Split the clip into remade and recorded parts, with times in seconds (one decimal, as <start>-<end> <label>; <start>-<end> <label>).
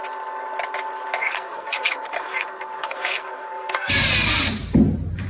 0.0-1.2 recorded; 1.2-3.9 remade; 3.9-5.3 recorded